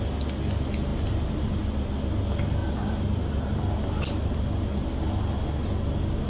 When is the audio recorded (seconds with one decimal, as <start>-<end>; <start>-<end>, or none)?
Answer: 0.0-0.9; 1.6-2.6; 3.3-6.3